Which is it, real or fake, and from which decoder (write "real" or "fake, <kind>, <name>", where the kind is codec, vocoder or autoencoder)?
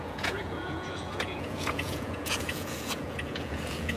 fake, vocoder, Vocos